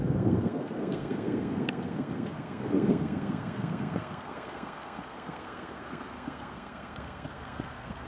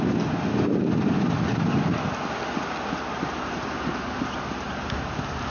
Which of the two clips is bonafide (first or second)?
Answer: second